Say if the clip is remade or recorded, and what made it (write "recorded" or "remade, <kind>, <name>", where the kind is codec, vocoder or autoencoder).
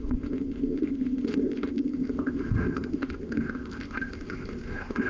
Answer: remade, codec, ZipCodec